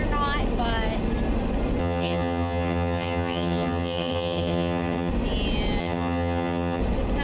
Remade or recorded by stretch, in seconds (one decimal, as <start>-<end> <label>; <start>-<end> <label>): 0.0-1.8 recorded; 1.8-5.1 remade; 5.1-5.8 recorded; 5.8-6.8 remade; 6.8-7.2 recorded